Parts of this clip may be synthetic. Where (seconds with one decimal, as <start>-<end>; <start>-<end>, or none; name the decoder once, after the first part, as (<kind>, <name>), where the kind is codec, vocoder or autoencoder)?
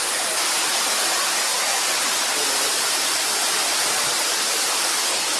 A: 1.5-3.2 (vocoder, BigVGAN v2); 3.6-4.8